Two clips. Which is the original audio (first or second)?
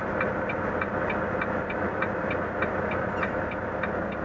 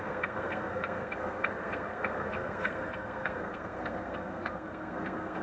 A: first